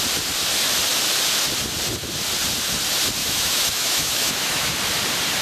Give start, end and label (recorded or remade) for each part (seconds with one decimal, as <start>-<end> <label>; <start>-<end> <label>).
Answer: 0.0-3.2 recorded; 3.2-4.7 remade; 4.7-5.4 recorded